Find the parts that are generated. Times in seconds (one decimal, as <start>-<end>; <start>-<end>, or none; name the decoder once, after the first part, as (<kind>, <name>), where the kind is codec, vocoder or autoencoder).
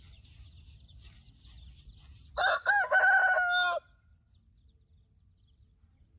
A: none